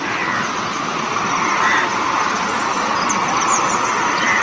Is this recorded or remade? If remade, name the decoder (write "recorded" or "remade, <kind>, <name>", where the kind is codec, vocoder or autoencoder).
recorded